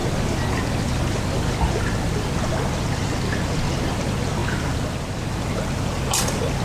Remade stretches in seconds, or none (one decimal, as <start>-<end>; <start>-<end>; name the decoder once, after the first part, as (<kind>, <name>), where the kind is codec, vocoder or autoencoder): none